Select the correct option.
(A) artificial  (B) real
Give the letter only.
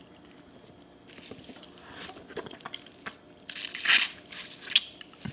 B